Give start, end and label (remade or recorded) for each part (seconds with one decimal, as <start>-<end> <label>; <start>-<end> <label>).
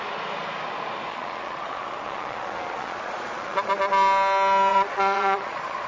0.0-1.1 recorded; 1.1-3.7 remade; 3.7-4.7 recorded; 4.7-5.9 remade